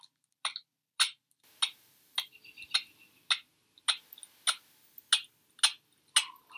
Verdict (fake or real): real